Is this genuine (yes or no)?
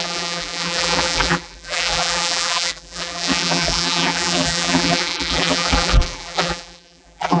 no